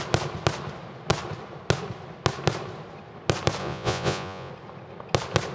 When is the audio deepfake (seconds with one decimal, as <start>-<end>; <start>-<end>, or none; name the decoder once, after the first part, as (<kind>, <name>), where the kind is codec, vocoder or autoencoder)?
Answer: 3.6-4.5 (vocoder, Vocos)